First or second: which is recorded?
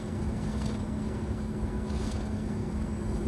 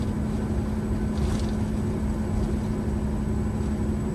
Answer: second